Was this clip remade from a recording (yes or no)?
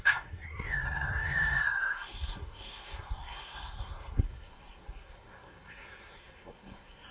yes